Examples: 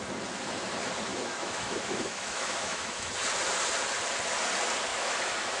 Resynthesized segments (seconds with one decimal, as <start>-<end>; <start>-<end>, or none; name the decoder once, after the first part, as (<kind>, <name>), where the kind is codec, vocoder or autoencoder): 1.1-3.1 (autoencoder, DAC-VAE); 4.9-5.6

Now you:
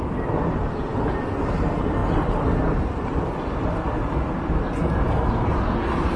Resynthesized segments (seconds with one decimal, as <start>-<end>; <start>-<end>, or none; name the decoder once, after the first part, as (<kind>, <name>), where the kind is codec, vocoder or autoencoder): none

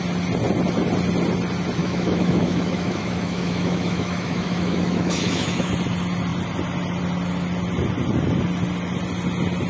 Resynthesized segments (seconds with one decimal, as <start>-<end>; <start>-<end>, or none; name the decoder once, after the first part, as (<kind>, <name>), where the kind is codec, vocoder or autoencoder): 1.8-5.7 (autoencoder, DAC-VAE)

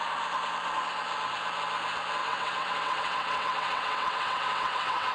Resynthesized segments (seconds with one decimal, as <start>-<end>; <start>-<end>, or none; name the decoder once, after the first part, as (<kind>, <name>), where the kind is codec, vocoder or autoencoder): 2.2-5.1 (vocoder, WaveNeXt)